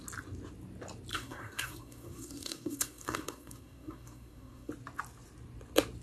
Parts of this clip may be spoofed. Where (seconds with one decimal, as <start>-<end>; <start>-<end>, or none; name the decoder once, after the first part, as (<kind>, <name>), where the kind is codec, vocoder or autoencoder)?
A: 1.1-4.7 (codec, SNAC)